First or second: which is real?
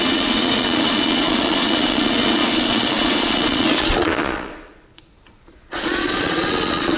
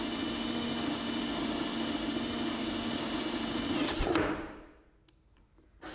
second